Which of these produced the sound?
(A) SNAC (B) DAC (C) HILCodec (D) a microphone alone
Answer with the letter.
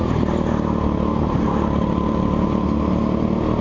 D